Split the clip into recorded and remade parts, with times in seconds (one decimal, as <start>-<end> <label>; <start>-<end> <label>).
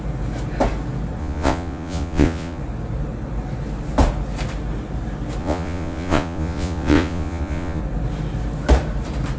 0.0-1.2 recorded; 1.2-2.6 remade; 2.6-5.4 recorded; 5.4-7.8 remade; 7.8-9.4 recorded